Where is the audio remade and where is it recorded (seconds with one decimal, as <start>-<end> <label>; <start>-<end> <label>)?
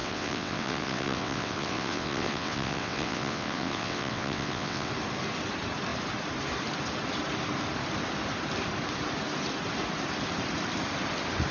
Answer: 0.0-4.9 remade; 4.9-11.5 recorded